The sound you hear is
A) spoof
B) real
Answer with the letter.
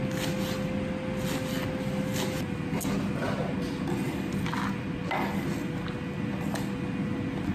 B